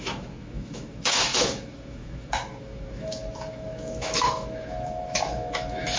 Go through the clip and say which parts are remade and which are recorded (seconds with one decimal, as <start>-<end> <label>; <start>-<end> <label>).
0.0-6.0 remade